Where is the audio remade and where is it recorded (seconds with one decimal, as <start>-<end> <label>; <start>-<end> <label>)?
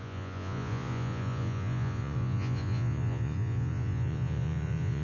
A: 0.0-5.0 remade